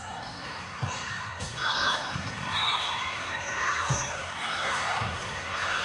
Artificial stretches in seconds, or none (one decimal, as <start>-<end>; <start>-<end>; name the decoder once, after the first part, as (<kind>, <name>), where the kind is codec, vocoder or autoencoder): 0.0-5.8 (codec, SNAC)